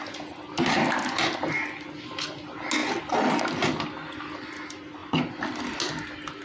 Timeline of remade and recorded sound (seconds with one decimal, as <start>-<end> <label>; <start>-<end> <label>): 0.0-6.4 recorded